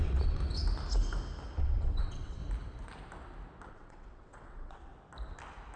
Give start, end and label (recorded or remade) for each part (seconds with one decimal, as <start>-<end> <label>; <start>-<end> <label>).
0.0-0.4 remade; 0.4-1.6 recorded; 1.6-2.4 remade; 2.4-3.7 recorded; 3.7-4.9 remade; 4.9-5.8 recorded